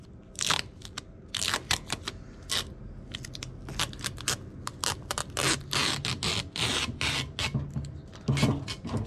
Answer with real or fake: real